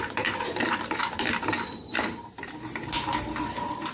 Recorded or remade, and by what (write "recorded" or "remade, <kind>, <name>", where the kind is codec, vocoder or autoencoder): remade, vocoder, BigVGAN v2